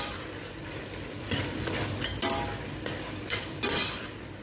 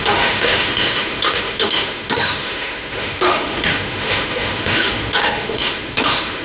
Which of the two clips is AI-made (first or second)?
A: second